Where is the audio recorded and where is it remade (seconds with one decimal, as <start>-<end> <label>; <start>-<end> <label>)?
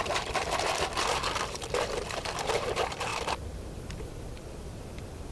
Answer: 0.0-3.1 remade; 3.1-5.3 recorded